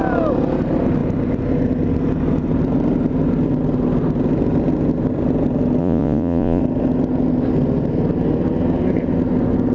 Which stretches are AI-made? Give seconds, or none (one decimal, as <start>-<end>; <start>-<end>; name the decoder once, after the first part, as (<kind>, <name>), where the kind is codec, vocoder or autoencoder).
5.8-6.6 (vocoder, Vocos)